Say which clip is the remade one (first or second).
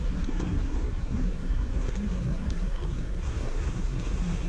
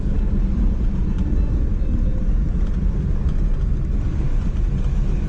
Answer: first